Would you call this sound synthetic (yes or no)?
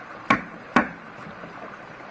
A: no